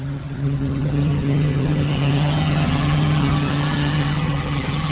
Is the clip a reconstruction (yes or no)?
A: yes